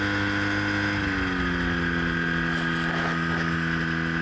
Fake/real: real